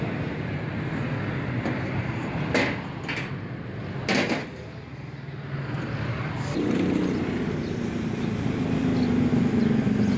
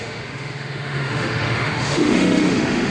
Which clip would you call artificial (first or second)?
second